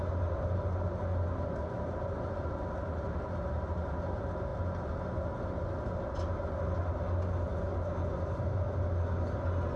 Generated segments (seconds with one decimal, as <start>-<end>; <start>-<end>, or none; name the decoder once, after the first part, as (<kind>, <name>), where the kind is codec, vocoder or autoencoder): none